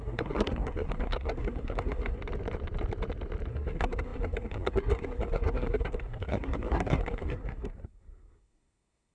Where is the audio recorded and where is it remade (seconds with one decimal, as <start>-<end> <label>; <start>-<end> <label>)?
0.0-2.2 remade; 2.2-3.5 recorded; 3.5-9.1 remade